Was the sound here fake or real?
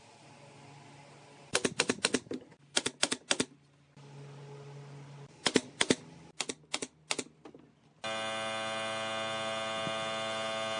real